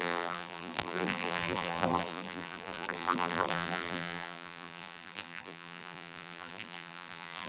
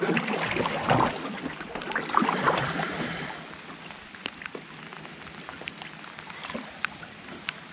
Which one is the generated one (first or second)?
first